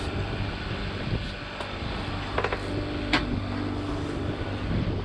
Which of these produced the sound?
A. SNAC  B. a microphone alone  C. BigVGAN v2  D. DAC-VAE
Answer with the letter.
B